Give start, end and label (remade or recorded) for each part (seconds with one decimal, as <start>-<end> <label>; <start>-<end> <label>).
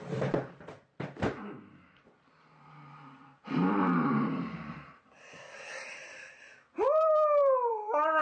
0.0-8.2 remade